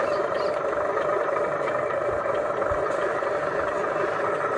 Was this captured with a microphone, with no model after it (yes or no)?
yes